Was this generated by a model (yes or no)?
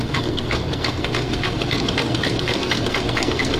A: yes